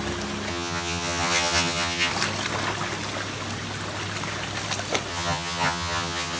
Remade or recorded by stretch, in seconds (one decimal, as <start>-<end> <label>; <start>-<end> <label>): 0.0-0.5 recorded; 0.5-2.1 remade; 2.1-5.1 recorded; 5.1-6.4 remade